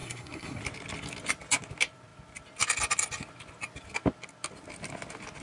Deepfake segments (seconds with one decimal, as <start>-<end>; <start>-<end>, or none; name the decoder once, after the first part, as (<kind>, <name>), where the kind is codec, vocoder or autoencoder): 0.0-0.6 (codec, SNAC)